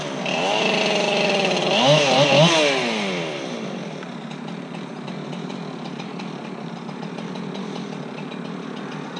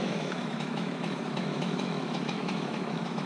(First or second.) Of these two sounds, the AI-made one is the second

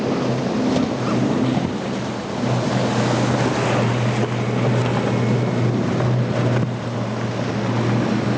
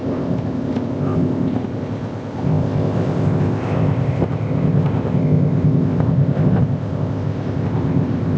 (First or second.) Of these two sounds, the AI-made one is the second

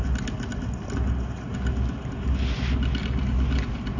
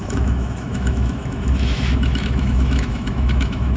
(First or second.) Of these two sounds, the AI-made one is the second